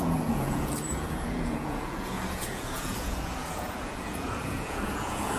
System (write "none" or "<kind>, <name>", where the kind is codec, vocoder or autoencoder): vocoder, Vocos